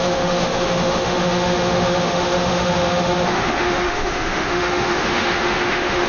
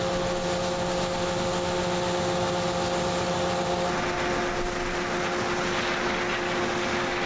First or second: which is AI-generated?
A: first